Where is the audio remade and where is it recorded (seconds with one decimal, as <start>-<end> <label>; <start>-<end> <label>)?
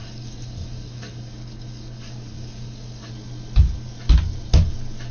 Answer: 0.0-3.1 remade; 3.1-5.1 recorded